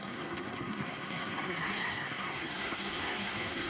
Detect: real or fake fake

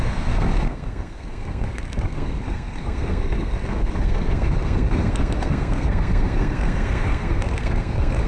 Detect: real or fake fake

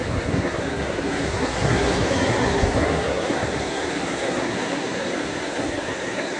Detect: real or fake fake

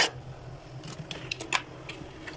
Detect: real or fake real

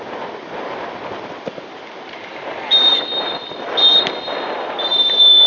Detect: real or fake real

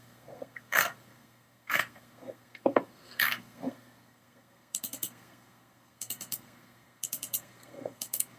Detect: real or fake fake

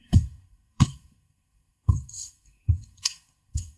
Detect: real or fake fake